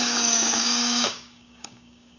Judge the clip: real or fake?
fake